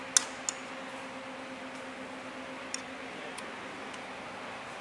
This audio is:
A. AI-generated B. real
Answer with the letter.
B